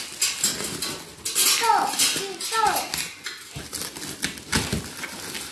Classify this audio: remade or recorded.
recorded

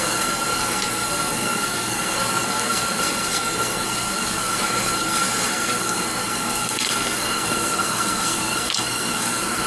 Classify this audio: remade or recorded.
remade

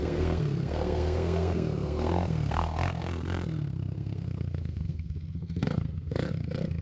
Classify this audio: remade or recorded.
remade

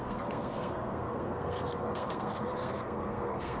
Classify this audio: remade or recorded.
remade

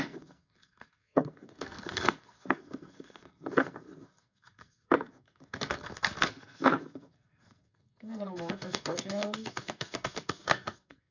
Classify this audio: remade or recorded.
remade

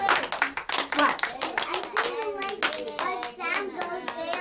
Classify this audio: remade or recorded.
recorded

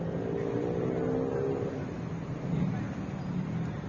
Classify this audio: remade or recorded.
recorded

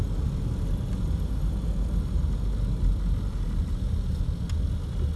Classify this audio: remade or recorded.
recorded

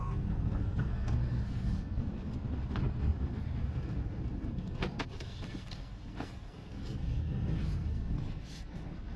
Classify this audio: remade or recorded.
remade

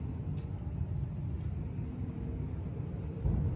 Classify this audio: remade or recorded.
recorded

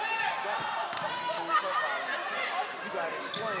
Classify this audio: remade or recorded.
recorded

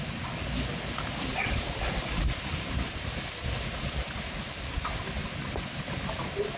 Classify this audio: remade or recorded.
recorded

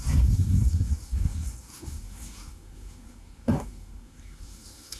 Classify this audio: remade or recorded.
remade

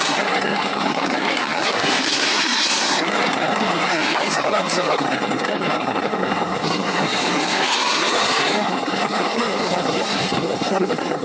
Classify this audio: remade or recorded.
remade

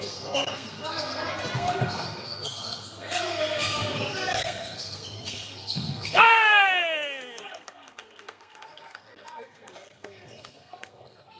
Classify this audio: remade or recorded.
remade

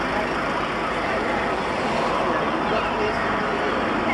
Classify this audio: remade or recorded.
recorded